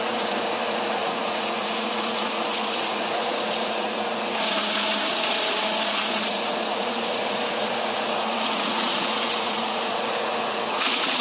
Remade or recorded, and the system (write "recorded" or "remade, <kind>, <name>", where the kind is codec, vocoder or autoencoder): remade, vocoder, Vocos